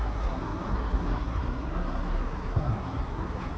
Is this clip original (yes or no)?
no